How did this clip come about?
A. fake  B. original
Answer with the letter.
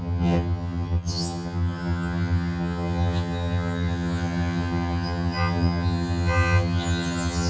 A